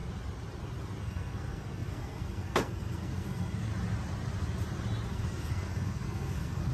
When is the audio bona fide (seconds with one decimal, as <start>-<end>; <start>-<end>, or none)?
0.0-1.0; 3.7-5.1